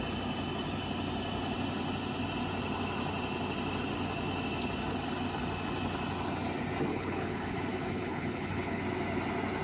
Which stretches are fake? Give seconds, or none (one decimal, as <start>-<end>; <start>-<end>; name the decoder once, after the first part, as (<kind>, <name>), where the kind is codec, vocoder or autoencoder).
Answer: 6.9-8.8 (codec, HILCodec)